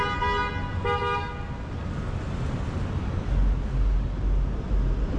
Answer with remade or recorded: recorded